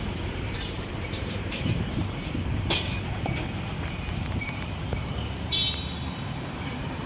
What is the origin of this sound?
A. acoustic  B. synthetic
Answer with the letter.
B